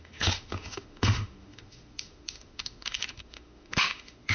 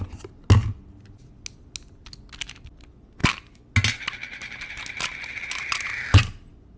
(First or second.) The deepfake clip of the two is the first